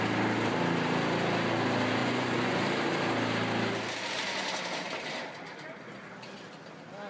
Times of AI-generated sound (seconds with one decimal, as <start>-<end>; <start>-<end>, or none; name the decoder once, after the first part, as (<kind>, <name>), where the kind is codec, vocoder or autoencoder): 2.0-2.6 (vocoder, Vocos)